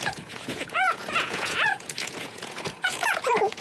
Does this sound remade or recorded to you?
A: remade